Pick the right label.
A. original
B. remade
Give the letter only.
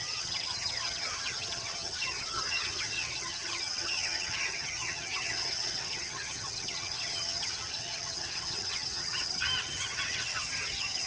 B